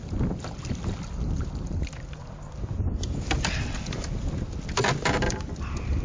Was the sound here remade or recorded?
recorded